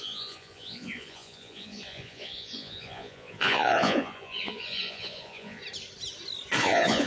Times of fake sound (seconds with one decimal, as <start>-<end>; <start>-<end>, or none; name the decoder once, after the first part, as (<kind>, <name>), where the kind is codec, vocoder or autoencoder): 0.0-5.6 (vocoder, Vocos); 6.6-7.1